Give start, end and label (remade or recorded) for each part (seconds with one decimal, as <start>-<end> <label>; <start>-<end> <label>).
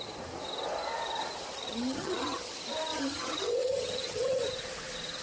0.0-1.6 recorded; 1.6-2.5 remade; 2.5-2.9 recorded; 2.9-4.5 remade; 4.5-5.2 recorded